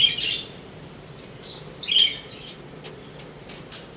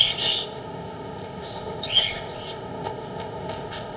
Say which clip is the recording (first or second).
first